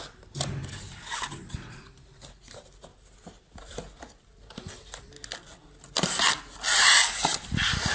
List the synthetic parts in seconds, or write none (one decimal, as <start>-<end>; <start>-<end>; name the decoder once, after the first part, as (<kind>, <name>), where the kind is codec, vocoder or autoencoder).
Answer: none